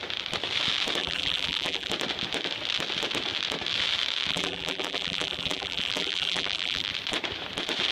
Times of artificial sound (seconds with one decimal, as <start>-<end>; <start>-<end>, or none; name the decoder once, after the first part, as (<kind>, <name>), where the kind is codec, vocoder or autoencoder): 1.0-1.9 (vocoder, BigVGAN v2); 4.3-6.9